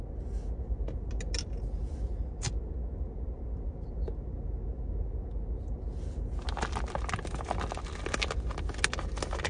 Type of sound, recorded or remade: recorded